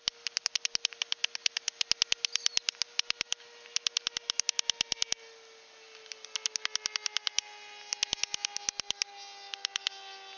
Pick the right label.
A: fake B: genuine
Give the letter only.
B